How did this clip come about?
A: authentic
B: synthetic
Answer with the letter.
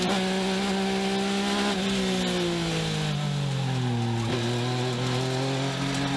A